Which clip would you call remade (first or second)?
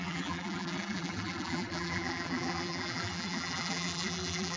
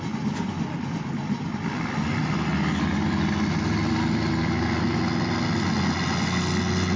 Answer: first